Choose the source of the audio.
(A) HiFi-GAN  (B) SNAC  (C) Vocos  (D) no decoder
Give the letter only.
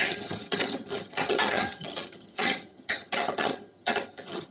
A